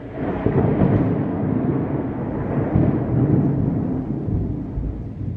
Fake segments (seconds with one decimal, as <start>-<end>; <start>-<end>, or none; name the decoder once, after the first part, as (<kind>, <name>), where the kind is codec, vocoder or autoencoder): 0.0-0.4 (codec, SNAC); 1.3-2.2